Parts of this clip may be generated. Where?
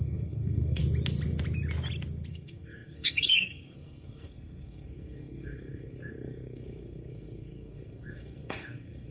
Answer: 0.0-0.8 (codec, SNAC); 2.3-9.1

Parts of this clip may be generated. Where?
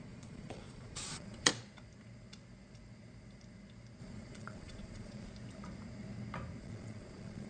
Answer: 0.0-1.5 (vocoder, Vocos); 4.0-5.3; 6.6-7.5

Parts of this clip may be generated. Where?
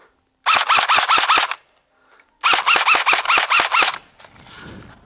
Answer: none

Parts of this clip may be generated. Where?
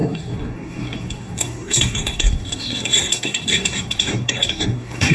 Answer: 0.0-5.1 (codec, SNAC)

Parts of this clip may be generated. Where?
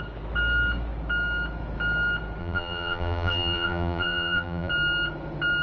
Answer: 2.4-4.7 (vocoder, BigVGAN v2)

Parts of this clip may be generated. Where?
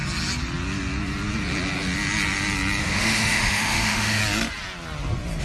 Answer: 2.8-4.2 (autoencoder, DAC-VAE)